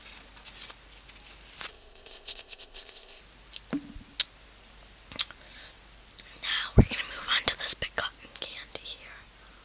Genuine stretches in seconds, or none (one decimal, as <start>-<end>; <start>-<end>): 0.0-1.7; 3.2-9.6

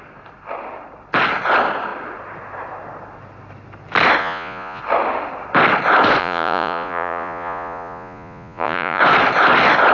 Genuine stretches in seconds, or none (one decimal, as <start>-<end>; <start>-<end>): 0.0-4.2; 4.8-6.2; 9.0-9.9

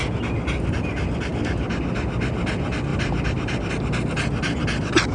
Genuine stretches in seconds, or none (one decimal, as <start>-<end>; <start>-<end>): 0.0-2.9; 3.7-5.1

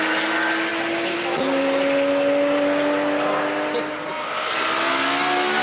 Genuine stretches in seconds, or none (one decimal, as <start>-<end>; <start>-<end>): 0.0-5.6

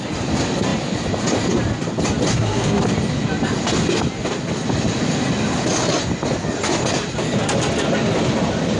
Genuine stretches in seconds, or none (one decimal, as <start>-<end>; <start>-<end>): 0.0-2.3; 2.8-8.8